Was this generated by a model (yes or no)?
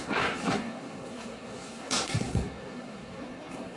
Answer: yes